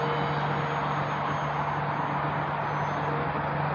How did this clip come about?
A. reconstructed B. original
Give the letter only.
B